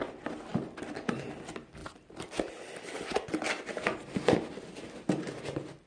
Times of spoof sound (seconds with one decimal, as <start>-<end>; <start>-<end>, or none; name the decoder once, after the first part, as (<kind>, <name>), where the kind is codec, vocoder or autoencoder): none